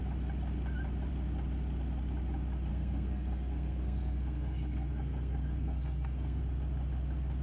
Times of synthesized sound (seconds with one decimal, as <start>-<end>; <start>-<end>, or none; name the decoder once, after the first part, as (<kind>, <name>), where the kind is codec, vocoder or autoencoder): 2.7-6.4 (codec, SNAC)